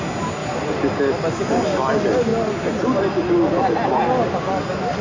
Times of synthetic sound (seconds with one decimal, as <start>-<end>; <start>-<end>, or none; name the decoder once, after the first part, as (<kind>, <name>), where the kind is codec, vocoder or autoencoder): none